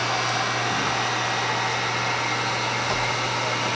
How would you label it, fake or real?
real